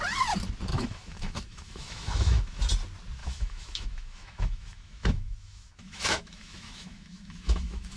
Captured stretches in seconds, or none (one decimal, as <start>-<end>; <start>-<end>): 0.0-0.7; 2.6-3.2